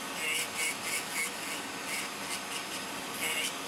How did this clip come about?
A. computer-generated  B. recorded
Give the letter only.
B